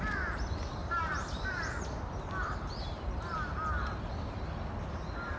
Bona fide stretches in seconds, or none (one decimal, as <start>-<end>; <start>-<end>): 0.0-0.8; 4.0-5.4

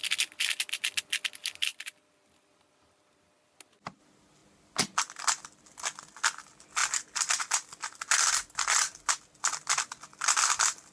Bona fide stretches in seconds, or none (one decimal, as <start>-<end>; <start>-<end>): 0.0-1.7; 4.0-4.4; 5.6-6.8; 7.4-10.9

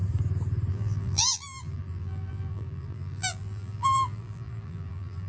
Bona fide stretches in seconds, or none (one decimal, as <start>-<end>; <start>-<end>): 0.0-0.7

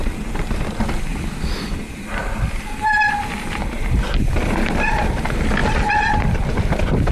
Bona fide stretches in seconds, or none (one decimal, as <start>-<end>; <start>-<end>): 0.0-1.1; 5.1-7.1

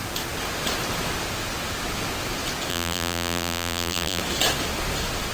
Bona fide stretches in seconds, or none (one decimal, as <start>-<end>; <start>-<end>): 0.0-2.7; 4.2-5.3